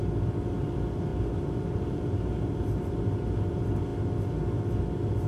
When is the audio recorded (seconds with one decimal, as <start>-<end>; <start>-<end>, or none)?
0.0-1.1; 3.0-5.3